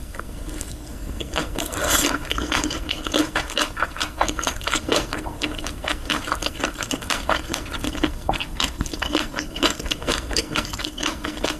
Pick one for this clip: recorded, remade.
remade